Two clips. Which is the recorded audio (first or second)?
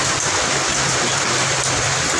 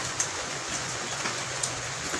first